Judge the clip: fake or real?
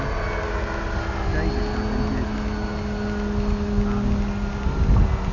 real